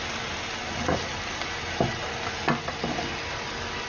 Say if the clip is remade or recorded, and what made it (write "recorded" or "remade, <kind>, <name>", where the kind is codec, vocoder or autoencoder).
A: recorded